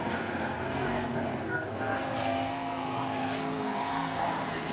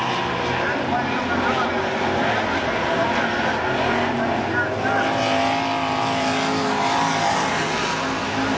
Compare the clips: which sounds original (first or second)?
second